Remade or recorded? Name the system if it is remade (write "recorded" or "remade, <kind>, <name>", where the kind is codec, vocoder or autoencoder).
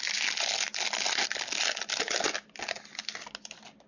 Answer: recorded